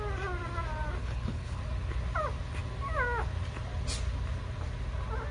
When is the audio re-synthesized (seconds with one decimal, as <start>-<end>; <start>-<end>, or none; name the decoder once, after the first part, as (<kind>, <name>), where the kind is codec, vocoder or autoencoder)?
1.0-1.6 (codec, HILCodec)